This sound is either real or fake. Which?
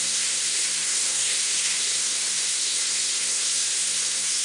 fake